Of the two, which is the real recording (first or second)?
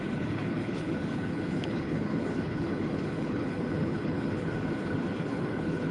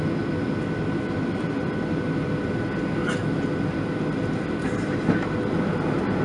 second